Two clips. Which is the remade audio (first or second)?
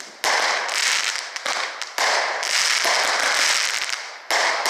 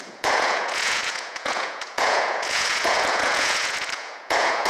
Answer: second